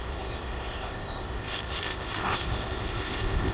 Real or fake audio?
fake